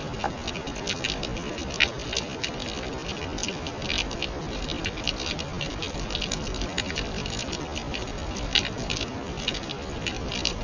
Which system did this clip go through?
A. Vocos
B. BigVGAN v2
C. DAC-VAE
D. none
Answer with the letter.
D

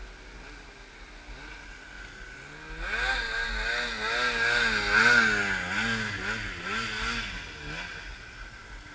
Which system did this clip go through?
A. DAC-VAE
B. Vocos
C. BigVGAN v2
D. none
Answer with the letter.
D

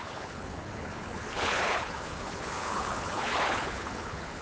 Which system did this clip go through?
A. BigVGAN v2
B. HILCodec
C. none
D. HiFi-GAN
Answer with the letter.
B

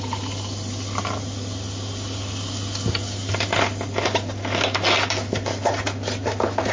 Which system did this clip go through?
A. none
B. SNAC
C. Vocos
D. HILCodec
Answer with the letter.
A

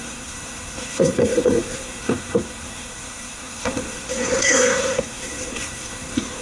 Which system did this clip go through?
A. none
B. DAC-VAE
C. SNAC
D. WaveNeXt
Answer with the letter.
C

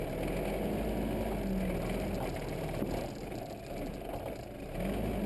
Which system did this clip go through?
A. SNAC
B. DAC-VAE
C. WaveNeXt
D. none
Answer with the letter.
D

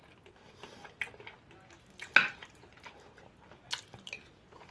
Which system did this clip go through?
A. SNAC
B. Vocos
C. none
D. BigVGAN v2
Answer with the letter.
C